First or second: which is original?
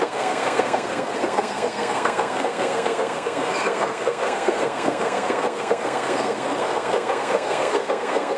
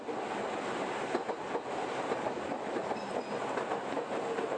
second